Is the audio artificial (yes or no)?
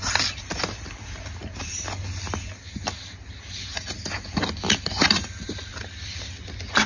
no